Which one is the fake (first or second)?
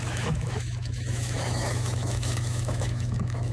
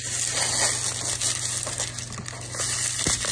first